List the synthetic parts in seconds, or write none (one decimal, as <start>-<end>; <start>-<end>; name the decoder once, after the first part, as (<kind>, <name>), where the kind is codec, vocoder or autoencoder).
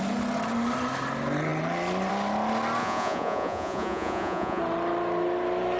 2.8-4.6 (vocoder, Vocos)